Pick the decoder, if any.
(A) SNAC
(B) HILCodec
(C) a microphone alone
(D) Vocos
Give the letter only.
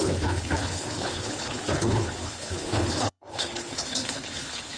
B